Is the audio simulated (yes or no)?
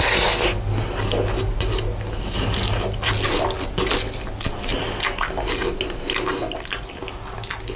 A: no